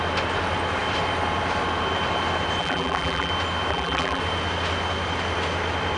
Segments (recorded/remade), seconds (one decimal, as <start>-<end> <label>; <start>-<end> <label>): 0.0-2.6 recorded; 2.6-3.3 remade; 3.3-3.7 recorded; 3.7-4.2 remade; 4.2-6.0 recorded

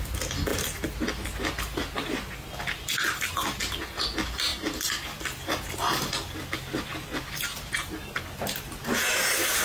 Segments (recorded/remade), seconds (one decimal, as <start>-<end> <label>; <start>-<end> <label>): 0.0-9.6 recorded

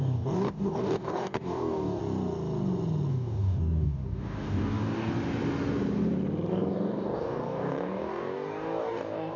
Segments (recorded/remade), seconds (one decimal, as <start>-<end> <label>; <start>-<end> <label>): 0.0-2.0 remade; 2.0-3.1 recorded; 3.1-5.1 remade; 5.1-6.5 recorded; 6.5-9.4 remade

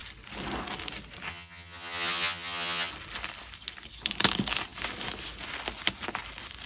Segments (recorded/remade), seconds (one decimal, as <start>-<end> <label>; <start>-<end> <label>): 0.0-1.3 recorded; 1.3-2.9 remade; 2.9-6.7 recorded

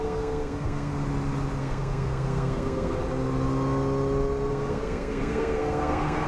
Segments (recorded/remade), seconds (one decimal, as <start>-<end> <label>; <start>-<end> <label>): 0.0-0.9 remade; 0.9-1.6 recorded; 1.6-3.0 remade; 3.0-4.5 recorded; 4.5-6.3 remade

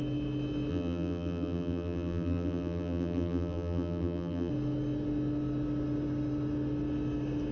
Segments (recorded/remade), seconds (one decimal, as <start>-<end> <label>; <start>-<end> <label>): 0.0-0.7 recorded; 0.7-4.5 remade; 4.5-7.5 recorded